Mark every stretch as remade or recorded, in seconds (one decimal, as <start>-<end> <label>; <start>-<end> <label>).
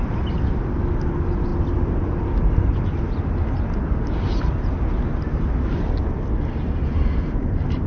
0.0-7.9 recorded